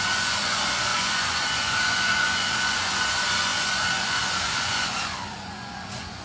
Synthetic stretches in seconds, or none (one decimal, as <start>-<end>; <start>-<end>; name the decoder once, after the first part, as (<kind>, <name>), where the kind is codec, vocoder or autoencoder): 0.0-6.2 (vocoder, Vocos)